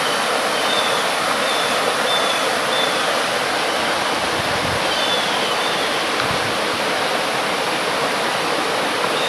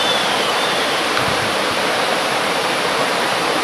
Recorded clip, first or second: first